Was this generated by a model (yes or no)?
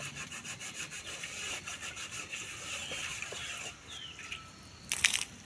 yes